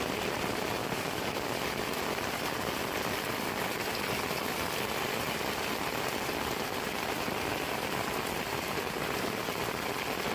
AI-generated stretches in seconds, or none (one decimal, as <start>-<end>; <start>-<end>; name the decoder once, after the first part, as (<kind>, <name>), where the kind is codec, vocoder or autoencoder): 0.8-1.5 (codec, DAC)